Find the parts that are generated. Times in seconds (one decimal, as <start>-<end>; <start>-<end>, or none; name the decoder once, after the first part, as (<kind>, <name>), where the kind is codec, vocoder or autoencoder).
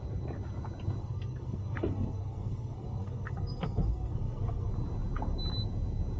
1.0-4.7 (codec, SNAC)